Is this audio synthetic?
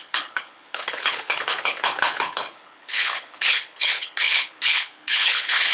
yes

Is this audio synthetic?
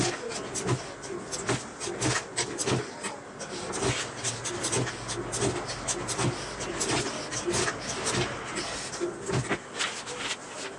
no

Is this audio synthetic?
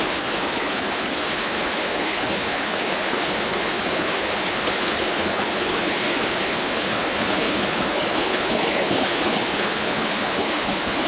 yes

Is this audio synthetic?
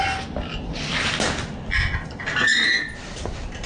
no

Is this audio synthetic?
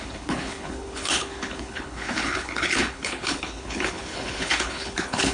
yes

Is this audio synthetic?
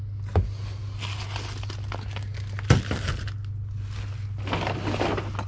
no